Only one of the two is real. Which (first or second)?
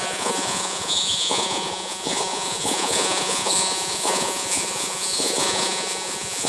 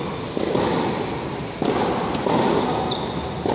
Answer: second